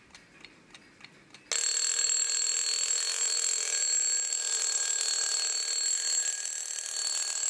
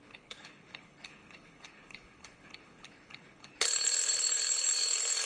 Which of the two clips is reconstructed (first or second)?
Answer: second